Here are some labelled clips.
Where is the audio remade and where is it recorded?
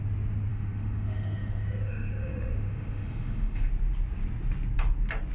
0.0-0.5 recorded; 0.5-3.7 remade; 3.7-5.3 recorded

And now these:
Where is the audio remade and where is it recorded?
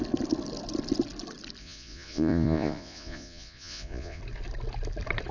0.0-1.6 recorded; 1.6-4.2 remade; 4.2-5.3 recorded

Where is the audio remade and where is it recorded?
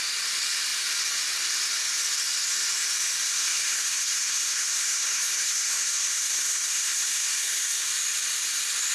0.0-3.2 recorded; 3.2-7.9 remade; 7.9-8.9 recorded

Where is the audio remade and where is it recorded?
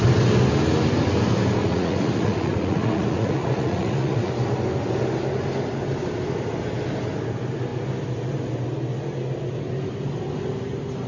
0.0-1.6 recorded; 1.6-4.3 remade; 4.3-11.1 recorded